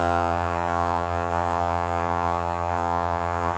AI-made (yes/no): yes